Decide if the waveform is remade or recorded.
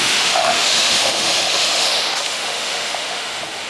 remade